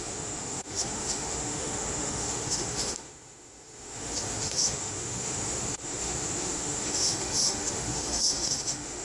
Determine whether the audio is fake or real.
fake